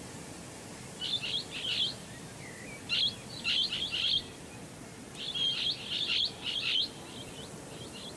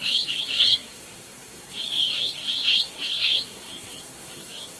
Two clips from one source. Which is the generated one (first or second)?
second